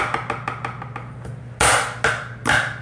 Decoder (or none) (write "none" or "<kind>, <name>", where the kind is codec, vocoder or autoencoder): none